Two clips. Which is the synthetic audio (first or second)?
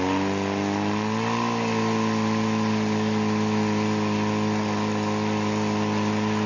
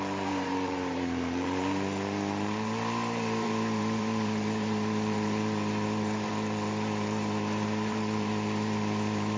second